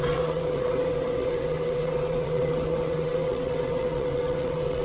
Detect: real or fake fake